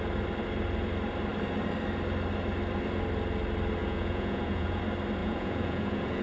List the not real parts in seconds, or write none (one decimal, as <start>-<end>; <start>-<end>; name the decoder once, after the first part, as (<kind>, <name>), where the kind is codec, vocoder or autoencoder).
3.8-4.8 (vocoder, Vocos); 5.2-6.2